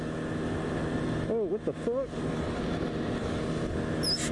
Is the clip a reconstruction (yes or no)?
no